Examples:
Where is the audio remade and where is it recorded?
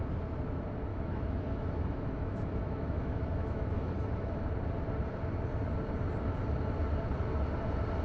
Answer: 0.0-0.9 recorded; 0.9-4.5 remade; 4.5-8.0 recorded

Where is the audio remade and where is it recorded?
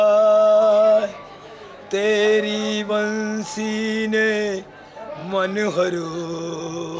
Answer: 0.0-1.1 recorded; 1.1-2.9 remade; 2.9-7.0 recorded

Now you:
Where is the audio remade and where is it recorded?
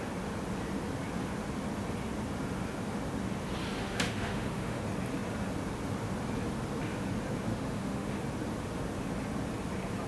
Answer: 0.0-3.8 recorded; 3.8-4.8 remade; 4.8-7.5 recorded; 7.5-8.1 remade; 8.1-10.1 recorded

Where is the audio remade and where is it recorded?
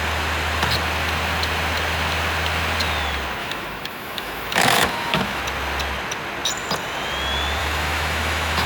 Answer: 0.0-3.4 recorded; 3.4-5.4 remade; 5.4-7.6 recorded; 7.6-8.7 remade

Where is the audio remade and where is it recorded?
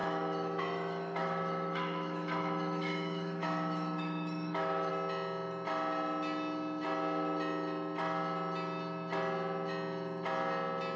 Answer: 0.0-4.9 remade; 4.9-11.0 recorded